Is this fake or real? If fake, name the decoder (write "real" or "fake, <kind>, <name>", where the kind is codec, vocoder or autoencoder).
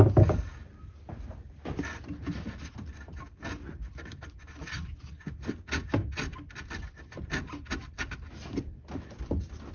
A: real